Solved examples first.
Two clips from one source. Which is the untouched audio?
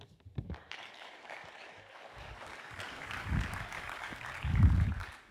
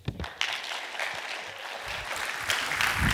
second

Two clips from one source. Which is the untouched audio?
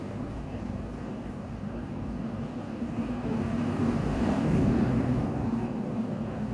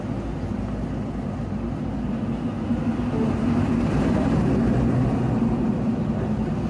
second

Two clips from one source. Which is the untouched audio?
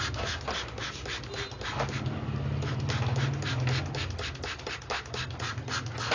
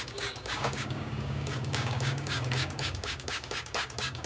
first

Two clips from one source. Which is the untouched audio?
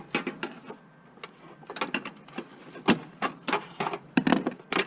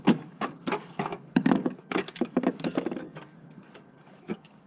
first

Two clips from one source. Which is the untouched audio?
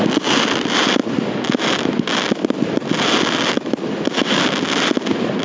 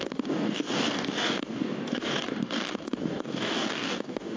first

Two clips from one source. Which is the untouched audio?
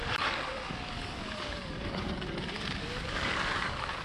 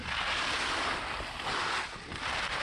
second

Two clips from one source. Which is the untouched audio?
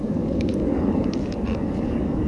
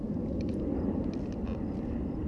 second